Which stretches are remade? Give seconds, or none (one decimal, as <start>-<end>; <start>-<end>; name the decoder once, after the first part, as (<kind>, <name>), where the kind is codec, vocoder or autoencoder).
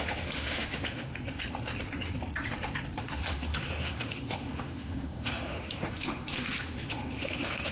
0.0-1.1 (autoencoder, DAC-VAE); 3.0-7.7